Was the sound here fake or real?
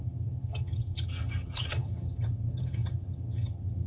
fake